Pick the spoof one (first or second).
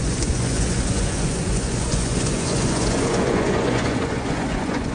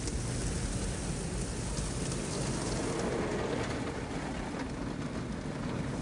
first